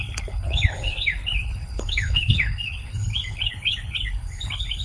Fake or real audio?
fake